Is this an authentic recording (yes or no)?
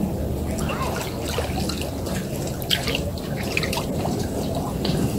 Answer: yes